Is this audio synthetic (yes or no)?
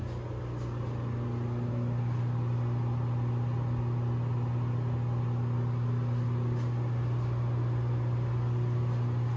no